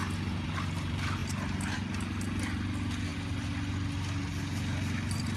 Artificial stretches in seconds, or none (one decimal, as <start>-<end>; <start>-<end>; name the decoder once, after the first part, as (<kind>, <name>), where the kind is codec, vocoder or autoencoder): none